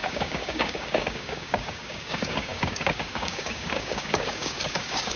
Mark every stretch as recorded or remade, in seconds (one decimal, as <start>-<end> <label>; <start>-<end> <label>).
0.0-5.2 remade